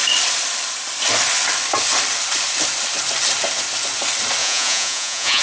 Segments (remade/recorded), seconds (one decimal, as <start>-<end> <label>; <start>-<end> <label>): 0.0-4.4 recorded; 4.4-5.4 remade